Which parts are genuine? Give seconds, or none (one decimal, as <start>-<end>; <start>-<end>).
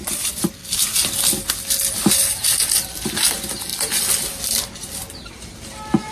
0.6-2.1; 3.7-4.7